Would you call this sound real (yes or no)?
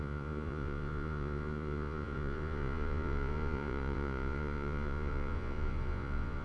no